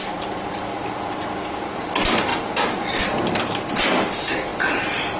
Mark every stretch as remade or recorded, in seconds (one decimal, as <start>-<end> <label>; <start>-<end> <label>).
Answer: 0.0-1.1 remade; 1.1-2.3 recorded; 2.3-3.0 remade; 3.0-5.2 recorded